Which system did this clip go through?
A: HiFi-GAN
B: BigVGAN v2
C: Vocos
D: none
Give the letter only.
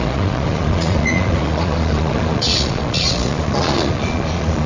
C